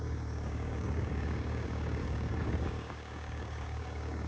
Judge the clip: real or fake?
fake